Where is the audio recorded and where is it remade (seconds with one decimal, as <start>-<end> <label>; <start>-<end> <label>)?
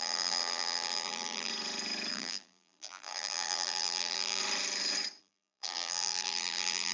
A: 0.0-1.5 remade; 1.5-2.1 recorded; 2.1-4.4 remade; 4.4-5.2 recorded; 5.2-6.9 remade